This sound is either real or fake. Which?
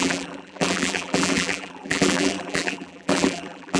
fake